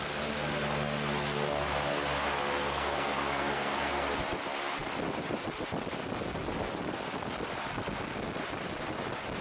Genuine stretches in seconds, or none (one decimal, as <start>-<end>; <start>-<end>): 0.0-2.6; 4.1-9.4